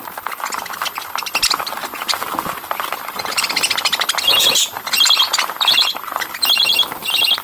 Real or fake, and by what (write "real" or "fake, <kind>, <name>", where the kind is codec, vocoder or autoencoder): real